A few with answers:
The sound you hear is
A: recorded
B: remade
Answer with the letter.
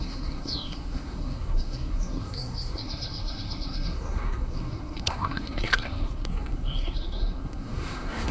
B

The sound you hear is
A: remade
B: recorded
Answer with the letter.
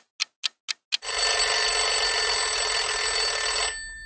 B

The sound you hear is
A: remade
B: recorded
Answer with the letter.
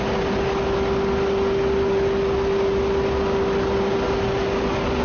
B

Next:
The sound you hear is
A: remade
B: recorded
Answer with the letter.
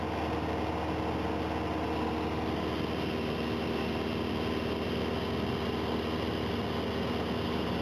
B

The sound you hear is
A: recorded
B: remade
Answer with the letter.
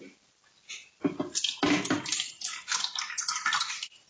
A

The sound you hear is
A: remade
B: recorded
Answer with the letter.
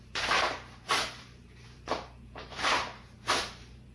A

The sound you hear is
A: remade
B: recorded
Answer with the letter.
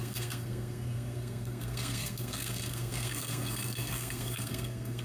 A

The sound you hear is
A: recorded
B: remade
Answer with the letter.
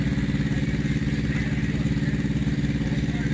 A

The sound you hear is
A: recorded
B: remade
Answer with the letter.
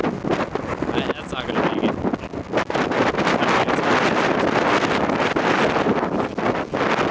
A